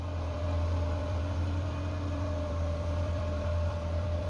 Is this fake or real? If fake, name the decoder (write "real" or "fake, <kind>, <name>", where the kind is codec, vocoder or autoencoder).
fake, vocoder, BigVGAN v2